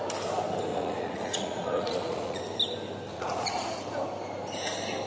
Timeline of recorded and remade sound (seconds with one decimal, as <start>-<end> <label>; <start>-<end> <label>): 0.0-0.7 recorded; 0.7-2.4 remade; 2.4-3.1 recorded; 3.1-3.8 remade; 3.8-5.1 recorded